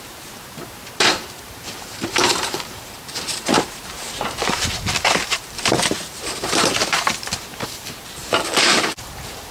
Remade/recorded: remade